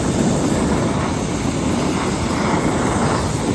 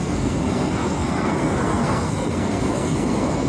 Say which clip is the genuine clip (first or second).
first